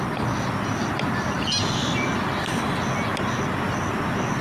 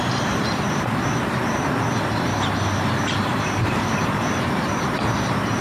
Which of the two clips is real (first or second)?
first